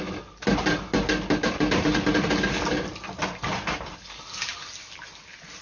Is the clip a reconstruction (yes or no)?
no